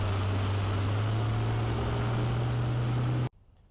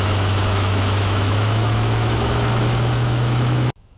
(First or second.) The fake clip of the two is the second